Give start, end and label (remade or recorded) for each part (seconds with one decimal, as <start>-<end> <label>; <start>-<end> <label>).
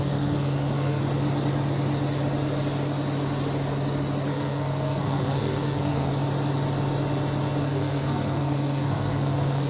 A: 0.0-1.0 remade; 1.0-4.3 recorded; 4.3-6.1 remade; 6.1-7.6 recorded; 7.6-9.7 remade